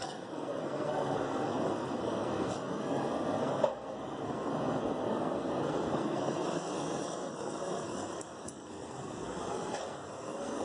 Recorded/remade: remade